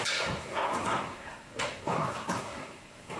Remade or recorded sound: remade